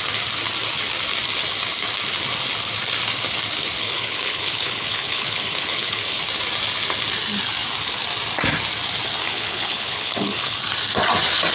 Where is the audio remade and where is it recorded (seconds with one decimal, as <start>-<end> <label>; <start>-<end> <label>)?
0.0-3.8 recorded; 3.8-6.2 remade; 6.2-9.2 recorded; 9.2-10.6 remade; 10.6-11.5 recorded